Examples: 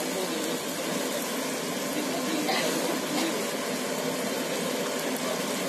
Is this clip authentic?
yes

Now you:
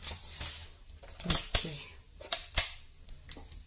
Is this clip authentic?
yes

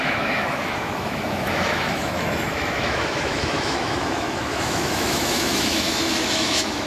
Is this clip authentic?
no